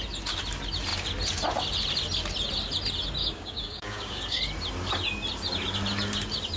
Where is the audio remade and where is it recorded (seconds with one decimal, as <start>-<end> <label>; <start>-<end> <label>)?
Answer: 0.0-3.2 recorded; 3.2-4.4 remade; 4.4-6.6 recorded